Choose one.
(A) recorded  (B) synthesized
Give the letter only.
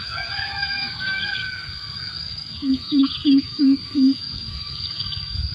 B